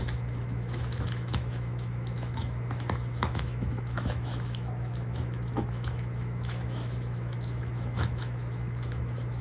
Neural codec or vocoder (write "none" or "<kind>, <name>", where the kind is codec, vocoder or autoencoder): autoencoder, DAC-VAE